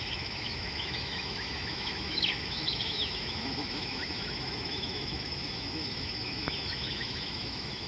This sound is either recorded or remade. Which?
remade